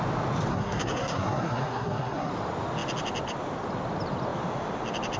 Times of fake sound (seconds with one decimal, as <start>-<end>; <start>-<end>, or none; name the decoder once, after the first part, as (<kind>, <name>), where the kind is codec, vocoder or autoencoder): 0.5-2.3 (codec, SNAC)